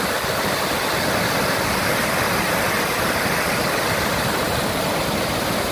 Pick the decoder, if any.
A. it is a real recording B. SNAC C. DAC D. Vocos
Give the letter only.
A